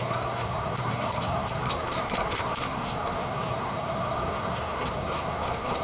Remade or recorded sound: remade